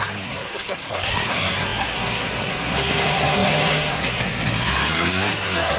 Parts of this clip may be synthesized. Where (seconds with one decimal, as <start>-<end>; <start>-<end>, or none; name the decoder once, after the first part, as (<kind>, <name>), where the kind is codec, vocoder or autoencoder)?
0.0-5.8 (codec, SNAC)